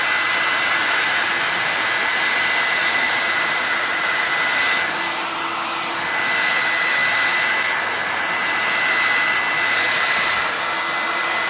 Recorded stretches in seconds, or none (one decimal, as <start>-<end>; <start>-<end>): 0.0-0.8; 1.3-2.8; 4.3-11.5